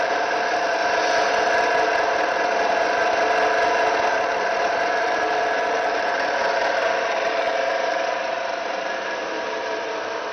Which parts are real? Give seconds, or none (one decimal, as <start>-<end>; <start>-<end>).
0.8-4.2; 6.4-7.0